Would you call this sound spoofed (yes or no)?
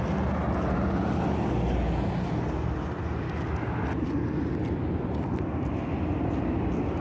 no